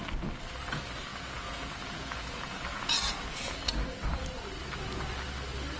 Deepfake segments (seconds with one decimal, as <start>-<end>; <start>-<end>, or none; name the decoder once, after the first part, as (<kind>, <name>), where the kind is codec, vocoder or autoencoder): 1.1-3.7 (vocoder, Vocos)